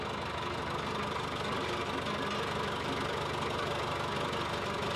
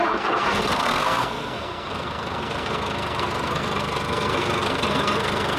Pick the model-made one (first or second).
second